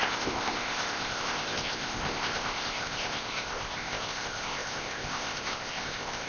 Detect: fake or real fake